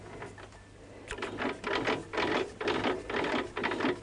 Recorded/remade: recorded